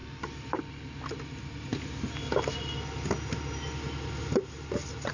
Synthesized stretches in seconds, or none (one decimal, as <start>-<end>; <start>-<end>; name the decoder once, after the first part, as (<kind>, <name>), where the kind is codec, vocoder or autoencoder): none